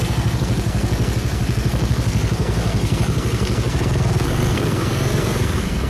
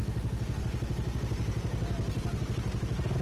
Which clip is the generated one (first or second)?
first